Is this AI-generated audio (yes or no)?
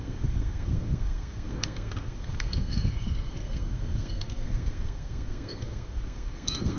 yes